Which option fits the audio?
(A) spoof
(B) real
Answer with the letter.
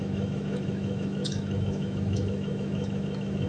A